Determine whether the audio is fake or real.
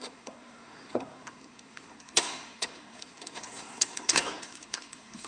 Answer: fake